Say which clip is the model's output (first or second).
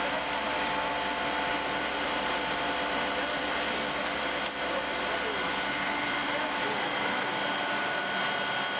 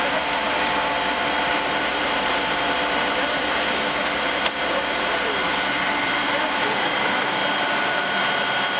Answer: second